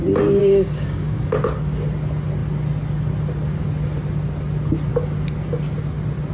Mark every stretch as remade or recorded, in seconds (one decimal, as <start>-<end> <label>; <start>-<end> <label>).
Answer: 0.0-0.4 recorded; 0.4-1.3 remade; 1.3-6.3 recorded